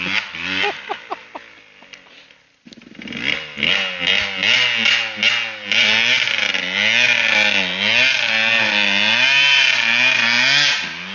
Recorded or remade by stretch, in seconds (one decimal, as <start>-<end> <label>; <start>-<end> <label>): 0.0-11.1 recorded